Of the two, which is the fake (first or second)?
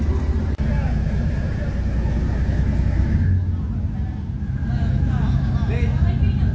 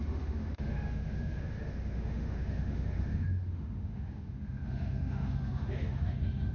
second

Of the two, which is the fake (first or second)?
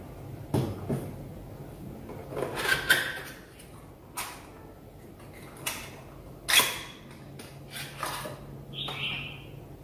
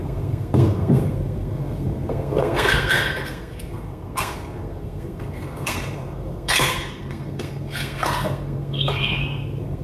second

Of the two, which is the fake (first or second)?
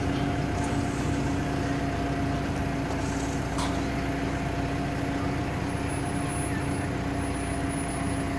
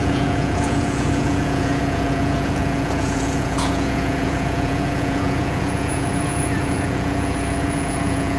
second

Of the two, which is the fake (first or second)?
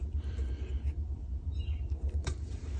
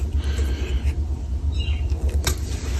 first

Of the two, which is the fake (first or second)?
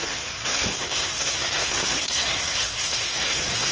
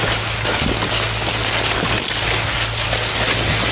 first